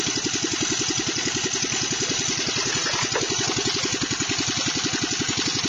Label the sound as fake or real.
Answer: real